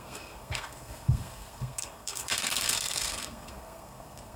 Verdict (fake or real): fake